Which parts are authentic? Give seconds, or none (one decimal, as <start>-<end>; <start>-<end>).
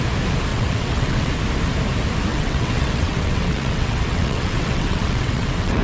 0.0-0.5; 1.3-2.3